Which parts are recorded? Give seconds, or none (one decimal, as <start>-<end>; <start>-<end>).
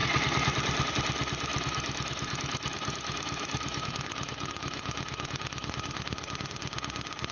0.0-1.5; 5.7-7.3